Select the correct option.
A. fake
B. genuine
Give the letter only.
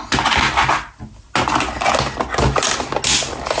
B